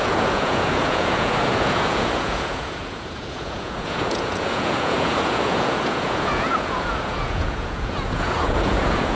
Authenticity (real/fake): fake